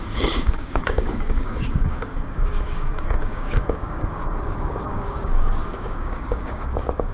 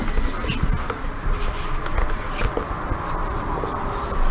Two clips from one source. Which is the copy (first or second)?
first